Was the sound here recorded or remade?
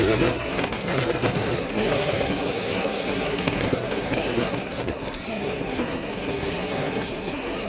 remade